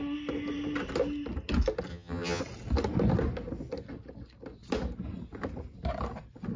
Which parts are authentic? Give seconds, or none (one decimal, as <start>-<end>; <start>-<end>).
0.0-1.9; 2.4-6.6